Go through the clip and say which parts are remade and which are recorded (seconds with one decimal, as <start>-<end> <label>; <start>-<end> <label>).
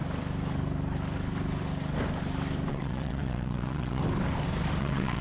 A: 0.0-2.7 recorded; 2.7-4.0 remade; 4.0-4.8 recorded; 4.8-5.2 remade